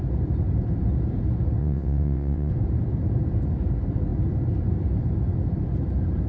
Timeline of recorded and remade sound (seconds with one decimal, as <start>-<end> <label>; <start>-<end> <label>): 0.0-1.6 recorded; 1.6-2.5 remade; 2.5-6.3 recorded